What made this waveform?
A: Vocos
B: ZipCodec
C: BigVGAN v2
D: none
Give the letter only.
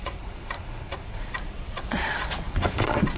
A